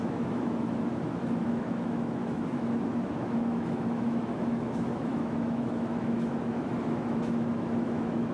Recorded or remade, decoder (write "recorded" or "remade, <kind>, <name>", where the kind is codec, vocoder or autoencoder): remade, autoencoder, DAC-VAE